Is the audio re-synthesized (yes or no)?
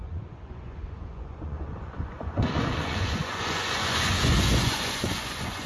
yes